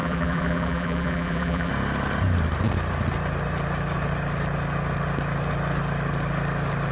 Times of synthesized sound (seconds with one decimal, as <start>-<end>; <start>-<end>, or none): 0.0-1.7